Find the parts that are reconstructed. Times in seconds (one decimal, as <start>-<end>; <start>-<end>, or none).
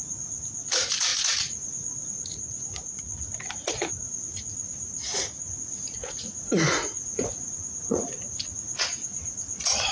0.0-9.9